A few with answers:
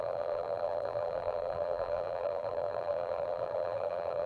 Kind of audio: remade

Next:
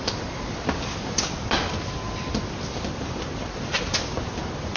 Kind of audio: recorded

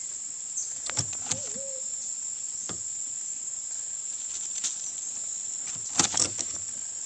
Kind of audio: recorded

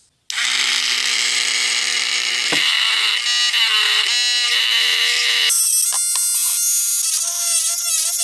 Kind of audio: recorded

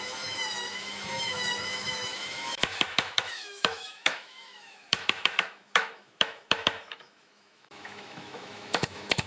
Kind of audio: remade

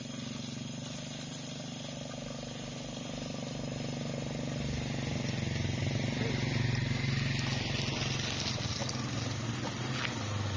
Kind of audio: recorded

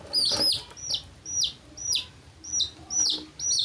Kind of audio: recorded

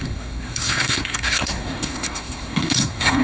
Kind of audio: remade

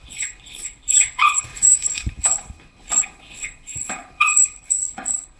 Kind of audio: remade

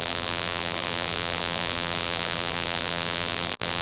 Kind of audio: remade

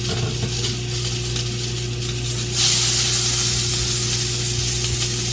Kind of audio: recorded